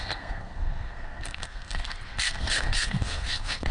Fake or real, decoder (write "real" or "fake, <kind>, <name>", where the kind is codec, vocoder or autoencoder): fake, codec, SNAC